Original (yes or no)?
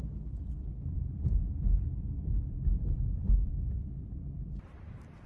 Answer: no